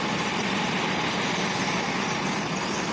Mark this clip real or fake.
real